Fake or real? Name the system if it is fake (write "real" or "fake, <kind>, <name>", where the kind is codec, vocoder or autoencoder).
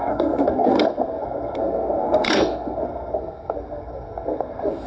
fake, codec, SNAC